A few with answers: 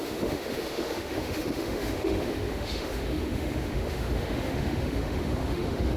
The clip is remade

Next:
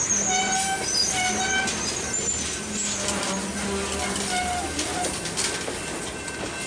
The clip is recorded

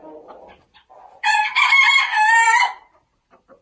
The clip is recorded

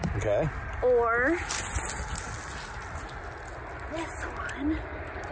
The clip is recorded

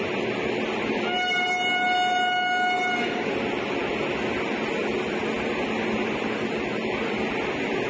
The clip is recorded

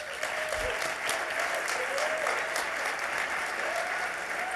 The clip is recorded